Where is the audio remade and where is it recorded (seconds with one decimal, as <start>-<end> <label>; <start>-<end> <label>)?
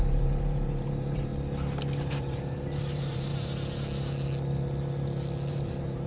0.0-1.3 remade; 1.3-2.0 recorded; 2.0-3.3 remade; 3.3-5.5 recorded; 5.5-6.1 remade